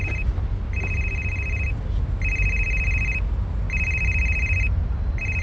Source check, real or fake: real